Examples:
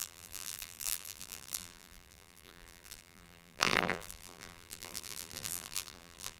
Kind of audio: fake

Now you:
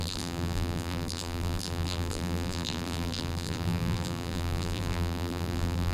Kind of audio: fake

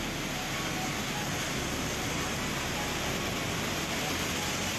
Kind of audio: real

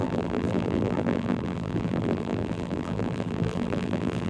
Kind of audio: fake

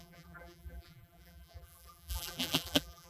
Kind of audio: fake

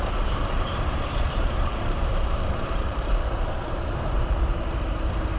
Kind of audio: fake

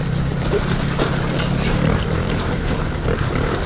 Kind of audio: fake